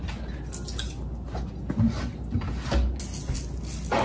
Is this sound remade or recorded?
recorded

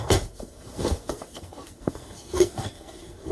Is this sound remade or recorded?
remade